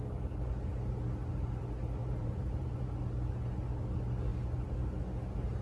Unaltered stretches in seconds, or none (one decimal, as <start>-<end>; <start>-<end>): 0.0-2.0; 2.8-5.6